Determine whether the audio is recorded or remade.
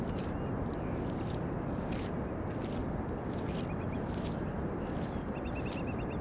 recorded